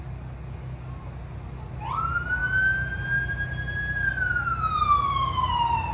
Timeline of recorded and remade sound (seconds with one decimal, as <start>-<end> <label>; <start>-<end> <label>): 0.0-5.9 recorded

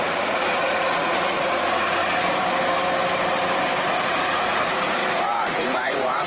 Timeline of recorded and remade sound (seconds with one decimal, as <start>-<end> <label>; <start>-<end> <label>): 0.0-2.0 remade; 2.0-3.9 recorded; 3.9-6.3 remade

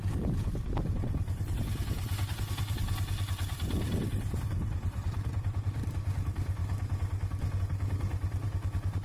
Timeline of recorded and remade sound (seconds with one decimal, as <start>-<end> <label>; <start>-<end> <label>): 0.0-6.6 remade; 6.6-7.6 recorded; 7.6-9.0 remade

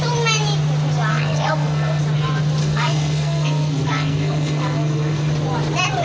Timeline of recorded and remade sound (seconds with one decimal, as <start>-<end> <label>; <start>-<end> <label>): 0.0-1.1 recorded; 1.1-2.0 remade; 2.0-2.6 recorded; 2.6-5.3 remade; 5.3-6.0 recorded

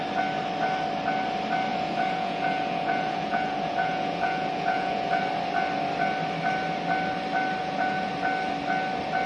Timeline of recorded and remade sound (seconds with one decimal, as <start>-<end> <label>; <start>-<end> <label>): 0.0-1.7 recorded; 1.7-5.2 remade; 5.2-7.6 recorded; 7.6-8.1 remade; 8.1-9.3 recorded

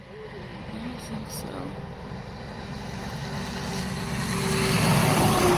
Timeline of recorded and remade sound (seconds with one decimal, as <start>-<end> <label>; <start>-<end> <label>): 0.0-0.5 recorded; 0.5-2.1 remade; 2.1-5.0 recorded; 5.0-5.6 remade